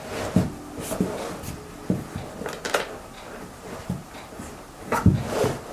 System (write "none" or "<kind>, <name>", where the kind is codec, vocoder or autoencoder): none